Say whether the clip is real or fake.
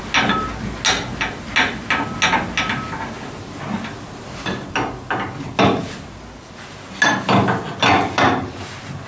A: real